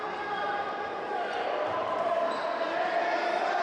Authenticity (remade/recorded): remade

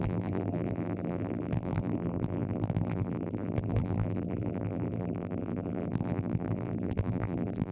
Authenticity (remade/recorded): remade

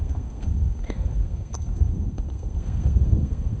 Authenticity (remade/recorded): remade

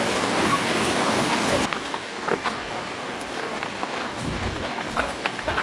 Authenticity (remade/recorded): remade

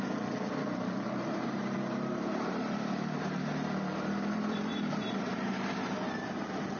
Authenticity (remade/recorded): remade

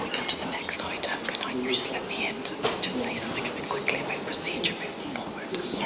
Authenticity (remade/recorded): recorded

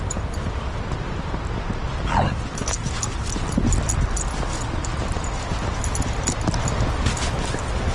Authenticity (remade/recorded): recorded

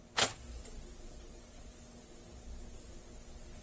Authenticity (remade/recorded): recorded